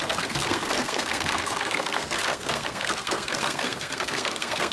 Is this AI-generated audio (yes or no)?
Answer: yes